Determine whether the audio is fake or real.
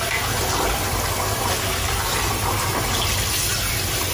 real